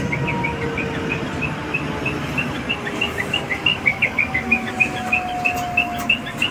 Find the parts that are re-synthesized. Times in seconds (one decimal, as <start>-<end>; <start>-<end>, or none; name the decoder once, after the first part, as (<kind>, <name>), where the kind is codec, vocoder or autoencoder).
3.7-4.7 (codec, DAC)